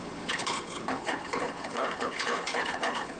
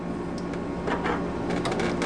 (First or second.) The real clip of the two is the second